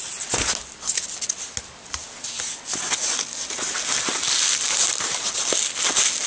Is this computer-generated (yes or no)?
no